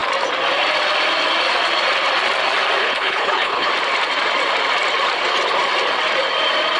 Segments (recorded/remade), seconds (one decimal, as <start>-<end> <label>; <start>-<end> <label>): 0.0-2.8 recorded; 2.8-3.7 remade; 3.7-6.8 recorded